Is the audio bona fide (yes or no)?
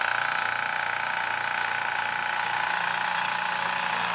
yes